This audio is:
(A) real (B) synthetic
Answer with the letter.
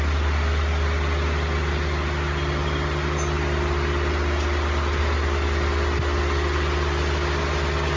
A